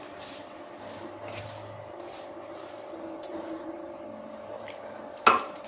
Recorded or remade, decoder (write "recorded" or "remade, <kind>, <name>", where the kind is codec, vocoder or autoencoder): recorded